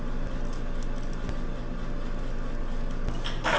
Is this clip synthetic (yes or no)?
no